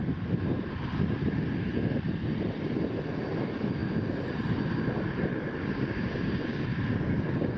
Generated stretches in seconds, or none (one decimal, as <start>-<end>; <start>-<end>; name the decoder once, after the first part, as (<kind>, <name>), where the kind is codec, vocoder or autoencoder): 5.3-7.6 (codec, DAC)